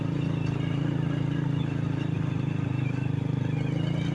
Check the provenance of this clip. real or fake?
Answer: real